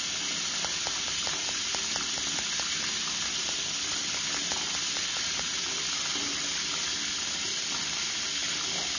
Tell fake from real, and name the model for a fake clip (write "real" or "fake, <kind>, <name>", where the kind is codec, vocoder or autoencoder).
real